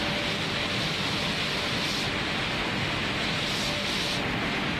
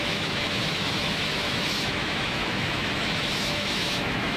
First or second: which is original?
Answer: first